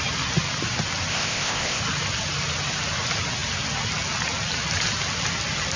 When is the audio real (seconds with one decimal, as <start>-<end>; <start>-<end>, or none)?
0.0-1.1; 1.8-5.8